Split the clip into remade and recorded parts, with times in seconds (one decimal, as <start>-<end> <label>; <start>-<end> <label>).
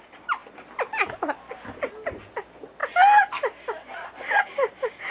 0.0-5.1 recorded